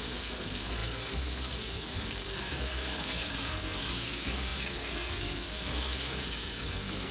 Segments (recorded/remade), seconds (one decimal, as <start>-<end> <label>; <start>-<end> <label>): 0.0-7.1 remade